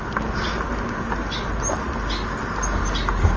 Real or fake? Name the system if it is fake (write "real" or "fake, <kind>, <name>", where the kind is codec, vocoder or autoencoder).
real